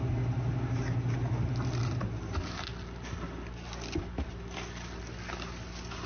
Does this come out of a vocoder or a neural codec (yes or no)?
no